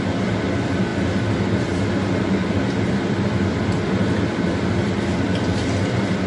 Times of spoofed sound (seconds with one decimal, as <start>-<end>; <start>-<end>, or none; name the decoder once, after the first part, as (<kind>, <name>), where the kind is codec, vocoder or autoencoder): 0.9-1.5 (vocoder, BigVGAN v2); 2.4-6.3